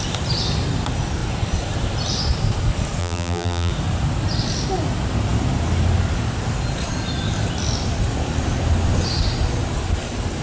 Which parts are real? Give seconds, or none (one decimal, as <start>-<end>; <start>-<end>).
0.0-3.0; 3.7-10.4